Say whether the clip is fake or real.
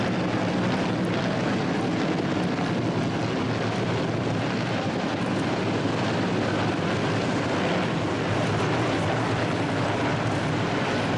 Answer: real